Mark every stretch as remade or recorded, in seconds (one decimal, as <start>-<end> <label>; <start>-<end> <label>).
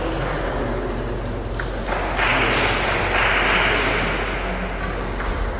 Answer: 0.0-5.6 recorded